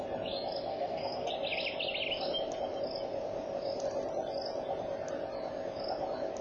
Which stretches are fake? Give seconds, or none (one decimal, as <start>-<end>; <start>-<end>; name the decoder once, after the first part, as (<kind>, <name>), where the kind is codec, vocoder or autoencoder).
0.7-1.3 (codec, SNAC)